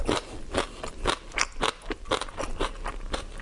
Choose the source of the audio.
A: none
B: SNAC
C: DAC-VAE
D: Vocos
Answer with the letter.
A